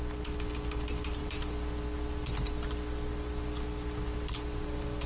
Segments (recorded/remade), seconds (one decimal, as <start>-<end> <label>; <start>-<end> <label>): 0.0-5.1 recorded